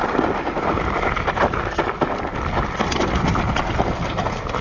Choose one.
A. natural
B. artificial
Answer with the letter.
A